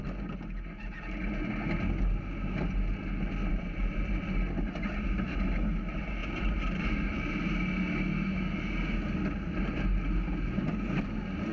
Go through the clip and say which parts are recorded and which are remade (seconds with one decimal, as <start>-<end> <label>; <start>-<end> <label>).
0.0-3.5 recorded; 3.5-4.1 remade; 4.1-6.2 recorded; 6.2-7.3 remade; 7.3-11.5 recorded